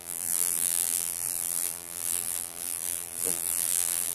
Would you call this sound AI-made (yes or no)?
yes